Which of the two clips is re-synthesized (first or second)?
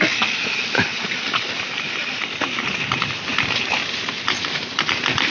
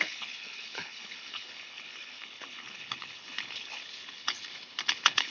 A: second